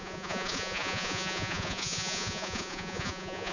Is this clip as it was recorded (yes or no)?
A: no